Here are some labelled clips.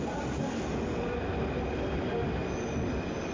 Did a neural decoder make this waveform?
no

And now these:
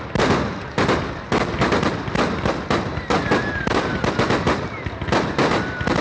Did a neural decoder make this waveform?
no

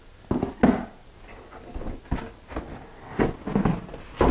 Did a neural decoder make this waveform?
no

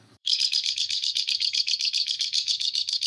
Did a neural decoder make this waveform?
yes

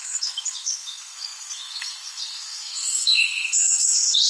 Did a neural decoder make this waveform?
yes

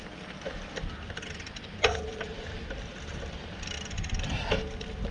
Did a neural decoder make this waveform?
no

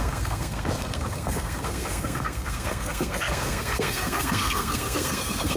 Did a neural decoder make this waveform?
yes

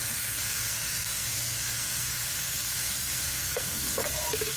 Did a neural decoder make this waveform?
yes